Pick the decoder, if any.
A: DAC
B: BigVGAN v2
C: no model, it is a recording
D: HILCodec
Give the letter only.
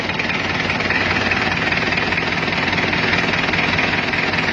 C